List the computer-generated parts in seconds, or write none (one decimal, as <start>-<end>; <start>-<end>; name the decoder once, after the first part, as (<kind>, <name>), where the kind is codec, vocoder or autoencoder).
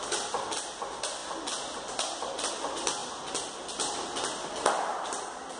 none